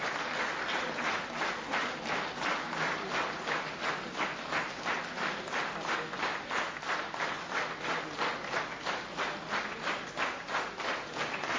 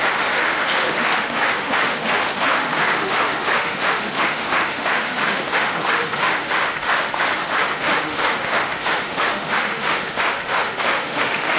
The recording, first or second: first